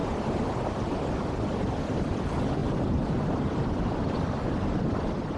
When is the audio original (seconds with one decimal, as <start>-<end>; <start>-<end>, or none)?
0.0-5.4